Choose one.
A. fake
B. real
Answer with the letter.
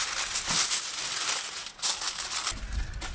B